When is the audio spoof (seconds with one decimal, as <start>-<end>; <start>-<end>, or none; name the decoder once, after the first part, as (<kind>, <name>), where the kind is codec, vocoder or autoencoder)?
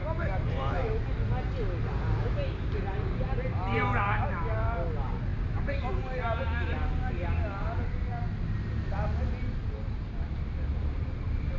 none